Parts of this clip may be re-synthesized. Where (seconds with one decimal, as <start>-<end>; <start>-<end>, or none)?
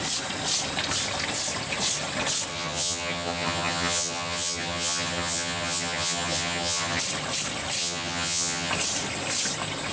2.5-7.0; 7.8-8.7